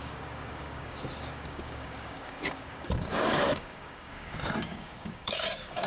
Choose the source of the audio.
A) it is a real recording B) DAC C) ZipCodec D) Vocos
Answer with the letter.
B